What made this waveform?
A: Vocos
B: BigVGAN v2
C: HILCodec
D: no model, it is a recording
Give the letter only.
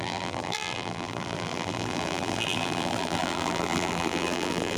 B